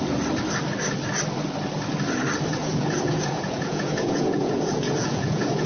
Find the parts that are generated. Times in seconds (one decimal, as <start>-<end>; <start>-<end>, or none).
2.6-5.7

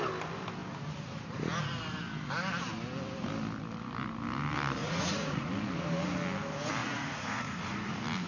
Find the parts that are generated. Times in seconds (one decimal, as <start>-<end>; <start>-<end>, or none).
4.8-5.5; 6.8-7.9

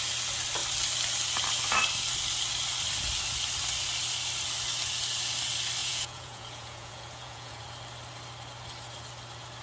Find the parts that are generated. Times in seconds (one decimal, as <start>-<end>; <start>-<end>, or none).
5.8-7.6